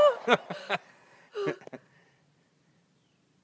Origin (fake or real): real